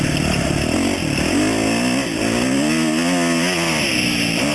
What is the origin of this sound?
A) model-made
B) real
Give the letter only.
B